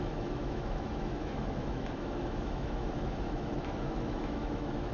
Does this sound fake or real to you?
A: fake